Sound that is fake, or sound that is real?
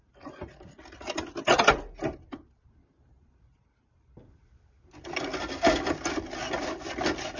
real